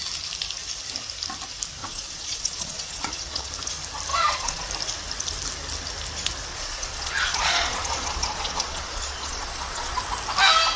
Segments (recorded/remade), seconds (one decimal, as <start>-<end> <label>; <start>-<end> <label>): 0.0-1.8 recorded; 1.8-3.5 remade; 3.5-4.1 recorded; 4.1-4.6 remade; 4.6-6.5 recorded; 6.5-10.0 remade; 10.0-10.8 recorded